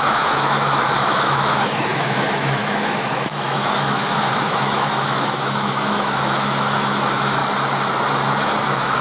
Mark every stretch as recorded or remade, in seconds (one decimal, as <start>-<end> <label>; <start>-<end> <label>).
0.0-7.4 remade; 7.4-8.6 recorded; 8.6-9.0 remade